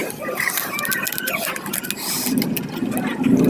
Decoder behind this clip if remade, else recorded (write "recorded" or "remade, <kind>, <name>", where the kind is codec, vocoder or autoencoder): recorded